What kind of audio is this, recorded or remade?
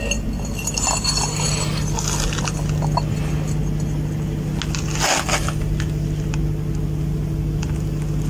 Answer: recorded